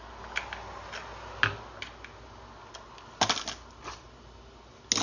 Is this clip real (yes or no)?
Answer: yes